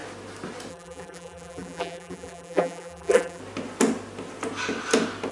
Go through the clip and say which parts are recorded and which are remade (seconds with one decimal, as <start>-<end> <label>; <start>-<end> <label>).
0.0-0.7 recorded; 0.7-3.4 remade; 3.4-5.3 recorded